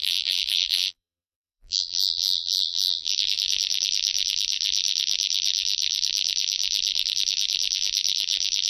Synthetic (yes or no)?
yes